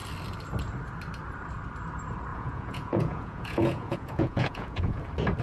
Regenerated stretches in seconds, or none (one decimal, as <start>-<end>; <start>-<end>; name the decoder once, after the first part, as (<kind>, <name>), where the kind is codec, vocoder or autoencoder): 2.3-5.0 (vocoder, Vocos)